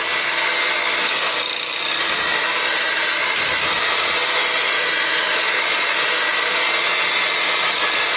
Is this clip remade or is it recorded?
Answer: recorded